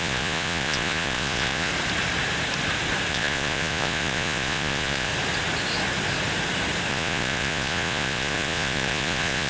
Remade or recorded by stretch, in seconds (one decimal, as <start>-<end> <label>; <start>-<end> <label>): 0.0-1.7 remade; 1.7-3.1 recorded; 3.1-5.1 remade; 5.1-6.9 recorded; 6.9-9.5 remade